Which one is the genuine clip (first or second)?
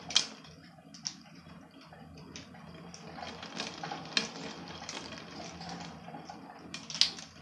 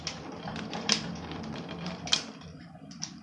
first